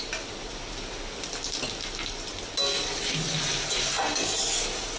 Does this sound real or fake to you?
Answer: real